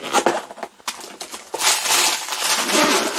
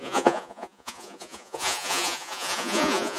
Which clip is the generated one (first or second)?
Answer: second